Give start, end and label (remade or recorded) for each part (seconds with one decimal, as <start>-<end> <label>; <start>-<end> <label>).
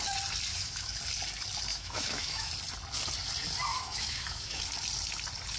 0.0-0.5 recorded; 0.5-1.0 remade; 1.0-1.7 recorded; 1.7-2.5 remade; 2.5-3.7 recorded; 3.7-4.6 remade; 4.6-5.6 recorded